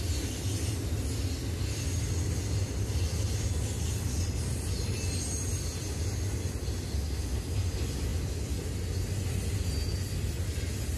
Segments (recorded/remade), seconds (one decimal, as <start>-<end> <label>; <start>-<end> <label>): 0.0-11.0 recorded